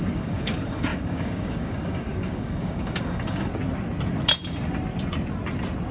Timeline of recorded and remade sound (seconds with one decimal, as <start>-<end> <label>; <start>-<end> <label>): 0.0-3.5 remade; 3.5-5.9 recorded